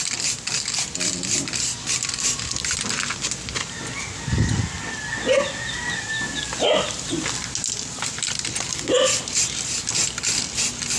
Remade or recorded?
recorded